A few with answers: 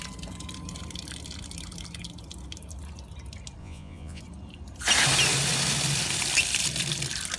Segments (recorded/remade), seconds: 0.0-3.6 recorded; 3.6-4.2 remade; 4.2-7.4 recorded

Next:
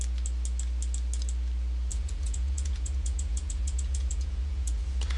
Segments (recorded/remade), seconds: 0.0-1.9 recorded; 1.9-5.2 remade

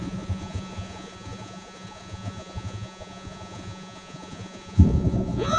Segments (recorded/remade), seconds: 0.0-5.6 remade